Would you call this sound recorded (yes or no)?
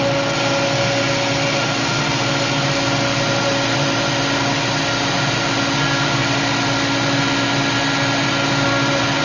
yes